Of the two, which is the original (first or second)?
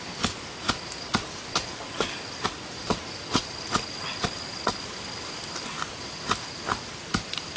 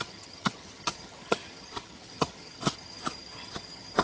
first